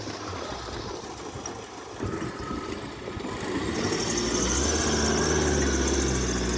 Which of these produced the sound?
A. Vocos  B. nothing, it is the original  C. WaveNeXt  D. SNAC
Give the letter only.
B